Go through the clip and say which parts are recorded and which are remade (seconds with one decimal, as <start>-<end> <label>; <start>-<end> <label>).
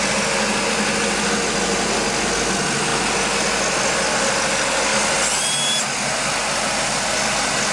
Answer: 0.0-7.7 recorded